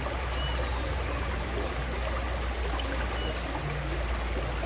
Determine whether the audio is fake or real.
real